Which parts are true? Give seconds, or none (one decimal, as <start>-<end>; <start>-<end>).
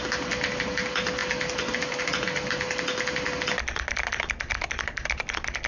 0.0-5.7